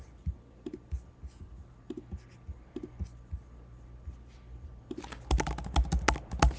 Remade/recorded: recorded